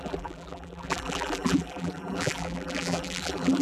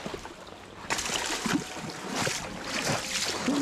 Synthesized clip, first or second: first